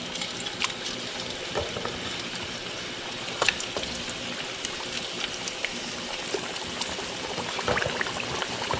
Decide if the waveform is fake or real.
real